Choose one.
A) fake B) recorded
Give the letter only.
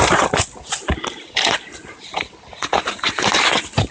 B